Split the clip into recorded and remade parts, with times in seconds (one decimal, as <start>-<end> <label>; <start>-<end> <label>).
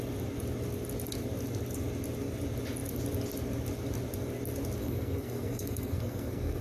0.0-4.8 recorded; 4.8-6.6 remade